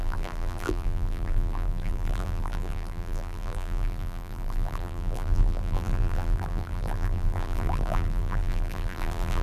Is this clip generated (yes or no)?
yes